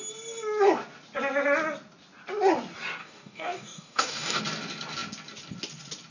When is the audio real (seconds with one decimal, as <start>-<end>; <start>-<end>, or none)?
0.0-3.0; 4.4-6.1